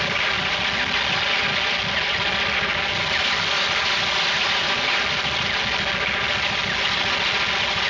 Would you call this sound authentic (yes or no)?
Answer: yes